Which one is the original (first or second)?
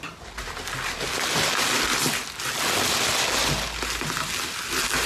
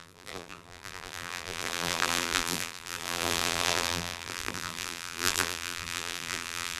first